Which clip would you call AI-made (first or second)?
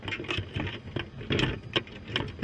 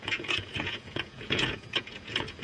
second